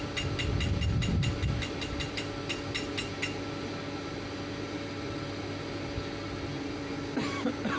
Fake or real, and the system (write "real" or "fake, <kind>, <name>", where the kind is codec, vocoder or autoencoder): real